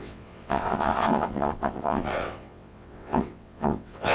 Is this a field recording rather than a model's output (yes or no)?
no